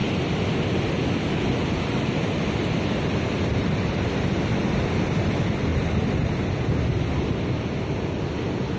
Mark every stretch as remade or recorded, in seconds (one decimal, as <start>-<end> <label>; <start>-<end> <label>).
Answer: 0.0-5.7 recorded; 5.7-6.3 remade; 6.3-8.8 recorded